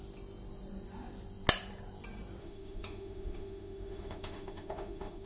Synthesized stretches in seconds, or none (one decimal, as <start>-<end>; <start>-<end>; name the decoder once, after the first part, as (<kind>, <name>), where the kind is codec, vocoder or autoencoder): 2.4-5.3 (autoencoder, DAC-VAE)